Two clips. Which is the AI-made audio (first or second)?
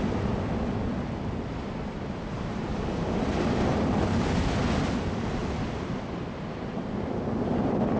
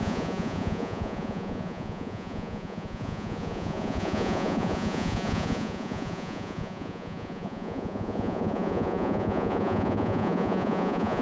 second